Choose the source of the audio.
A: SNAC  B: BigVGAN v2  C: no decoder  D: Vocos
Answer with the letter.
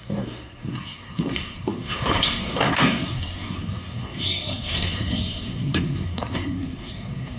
A